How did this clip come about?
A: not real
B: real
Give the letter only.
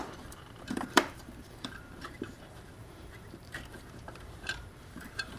A